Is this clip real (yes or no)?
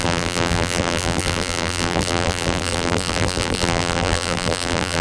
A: no